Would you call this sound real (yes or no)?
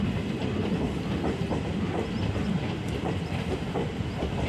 yes